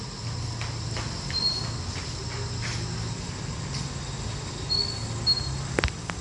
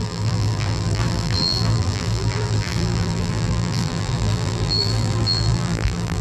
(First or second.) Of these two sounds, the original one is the first